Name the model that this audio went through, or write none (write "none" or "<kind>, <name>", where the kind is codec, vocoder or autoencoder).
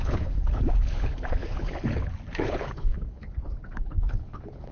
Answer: codec, HILCodec